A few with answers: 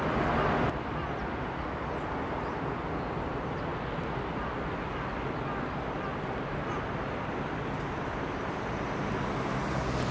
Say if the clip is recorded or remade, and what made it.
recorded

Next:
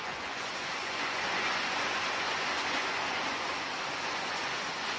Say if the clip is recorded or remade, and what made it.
remade, vocoder, Vocos